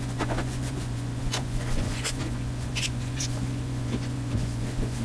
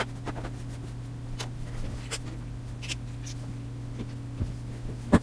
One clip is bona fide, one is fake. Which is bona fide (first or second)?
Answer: second